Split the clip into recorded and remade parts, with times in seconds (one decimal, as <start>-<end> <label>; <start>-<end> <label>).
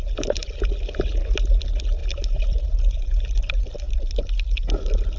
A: 0.0-2.0 recorded; 2.0-5.2 remade